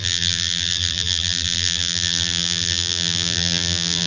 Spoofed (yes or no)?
yes